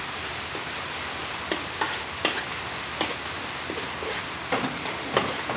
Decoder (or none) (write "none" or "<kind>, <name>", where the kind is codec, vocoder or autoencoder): none